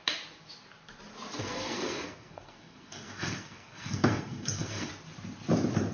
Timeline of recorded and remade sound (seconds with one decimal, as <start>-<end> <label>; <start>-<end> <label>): 0.0-1.4 recorded; 1.4-4.9 remade; 4.9-5.9 recorded